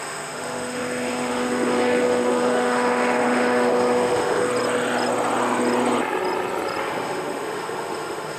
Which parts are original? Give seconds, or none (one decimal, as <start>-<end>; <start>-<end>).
4.5-6.8